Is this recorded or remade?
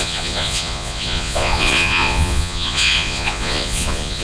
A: remade